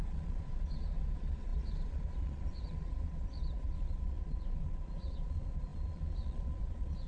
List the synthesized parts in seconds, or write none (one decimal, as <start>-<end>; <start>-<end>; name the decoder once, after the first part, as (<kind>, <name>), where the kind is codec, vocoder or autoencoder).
0.0-7.1 (vocoder, Vocos)